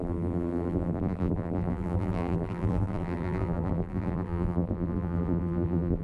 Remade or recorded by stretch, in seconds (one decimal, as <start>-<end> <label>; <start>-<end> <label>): 0.0-6.0 remade